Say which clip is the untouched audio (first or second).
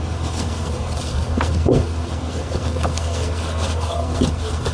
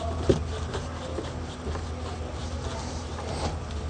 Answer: second